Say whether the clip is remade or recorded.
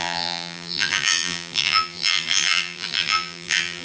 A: remade